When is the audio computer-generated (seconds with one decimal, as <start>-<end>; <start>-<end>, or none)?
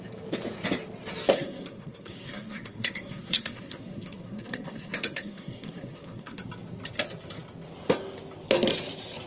1.3-6.4